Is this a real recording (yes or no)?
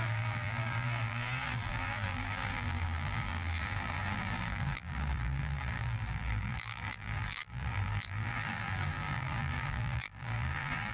no